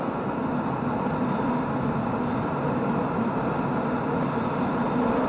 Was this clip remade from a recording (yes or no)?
no